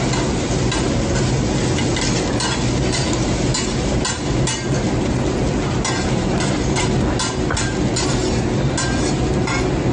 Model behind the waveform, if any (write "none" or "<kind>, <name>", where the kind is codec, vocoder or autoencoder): none